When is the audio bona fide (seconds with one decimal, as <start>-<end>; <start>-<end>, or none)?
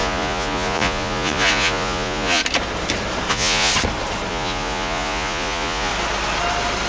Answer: 2.4-3.3; 3.7-4.3; 5.9-6.9